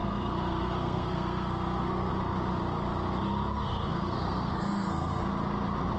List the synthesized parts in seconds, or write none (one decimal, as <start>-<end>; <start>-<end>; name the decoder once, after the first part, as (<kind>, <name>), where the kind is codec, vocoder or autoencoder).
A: 0.0-2.1 (codec, SNAC); 3.9-5.2